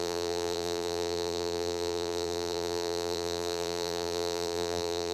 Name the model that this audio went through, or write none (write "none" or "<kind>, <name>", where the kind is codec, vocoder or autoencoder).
vocoder, BigVGAN v2